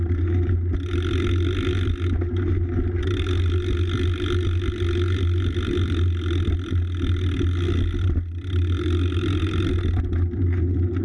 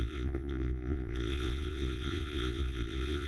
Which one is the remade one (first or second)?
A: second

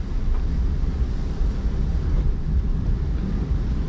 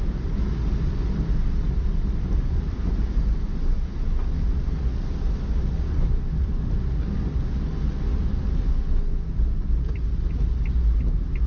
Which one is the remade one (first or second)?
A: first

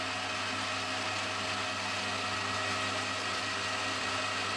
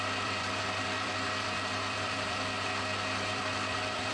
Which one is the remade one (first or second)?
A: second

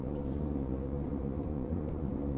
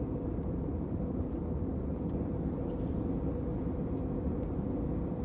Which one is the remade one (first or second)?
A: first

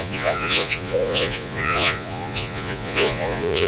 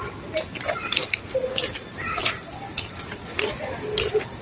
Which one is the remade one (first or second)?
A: first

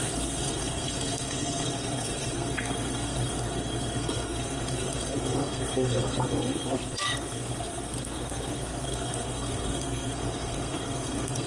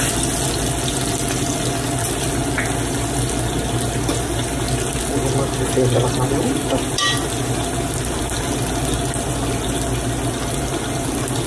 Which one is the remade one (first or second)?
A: first